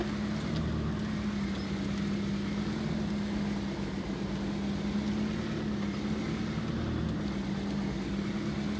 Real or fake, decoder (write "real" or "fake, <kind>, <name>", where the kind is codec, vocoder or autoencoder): real